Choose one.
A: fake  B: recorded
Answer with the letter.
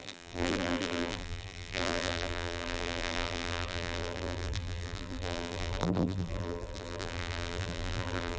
A